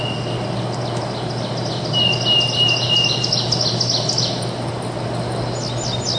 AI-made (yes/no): no